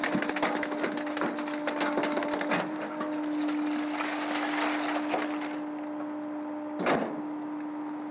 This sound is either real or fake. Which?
real